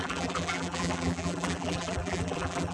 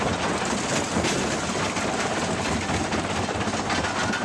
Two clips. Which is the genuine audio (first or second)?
second